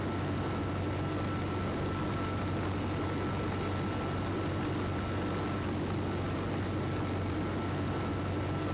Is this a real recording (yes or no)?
yes